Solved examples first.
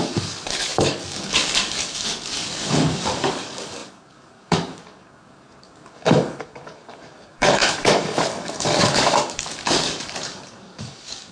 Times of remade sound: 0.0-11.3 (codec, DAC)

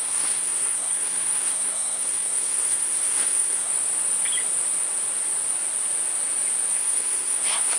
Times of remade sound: 0.0-3.7 (codec, SNAC); 6.7-7.8

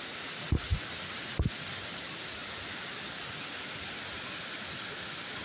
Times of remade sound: 0.7-1.8 (vocoder, BigVGAN v2)

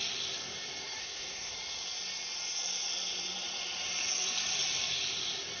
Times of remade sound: 1.0-1.5 (codec, SNAC)

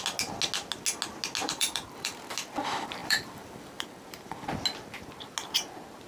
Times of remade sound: 1.4-2.3 (vocoder, BigVGAN v2); 3.0-4.0

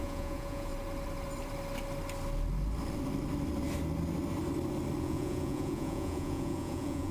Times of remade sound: 0.0-0.7 (vocoder, Vocos); 5.0-7.1

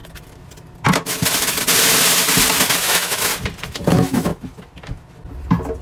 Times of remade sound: 2.8-3.3 (autoencoder, DAC-VAE); 3.9-4.3